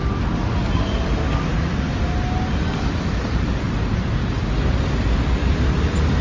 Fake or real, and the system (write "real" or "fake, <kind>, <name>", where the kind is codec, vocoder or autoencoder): real